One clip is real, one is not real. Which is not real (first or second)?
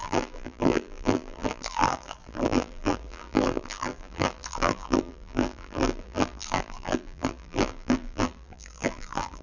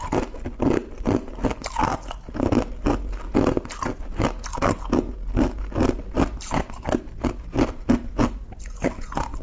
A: first